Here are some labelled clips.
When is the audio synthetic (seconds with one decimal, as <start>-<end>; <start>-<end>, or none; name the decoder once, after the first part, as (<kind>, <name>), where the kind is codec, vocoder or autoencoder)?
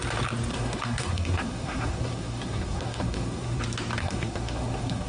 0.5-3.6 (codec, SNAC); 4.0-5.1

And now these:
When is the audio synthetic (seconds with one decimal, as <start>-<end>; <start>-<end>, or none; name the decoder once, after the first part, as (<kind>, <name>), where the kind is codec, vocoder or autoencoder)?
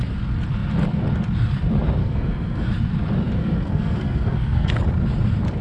2.0-2.7 (codec, SNAC); 3.4-4.7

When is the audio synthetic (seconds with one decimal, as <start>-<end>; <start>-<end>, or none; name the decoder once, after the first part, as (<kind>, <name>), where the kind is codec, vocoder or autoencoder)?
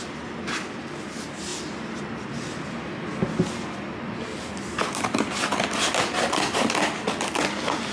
none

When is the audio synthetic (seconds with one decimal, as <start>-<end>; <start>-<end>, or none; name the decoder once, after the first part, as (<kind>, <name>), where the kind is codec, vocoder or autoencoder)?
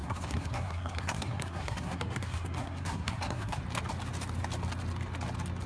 0.0-3.6 (codec, SNAC)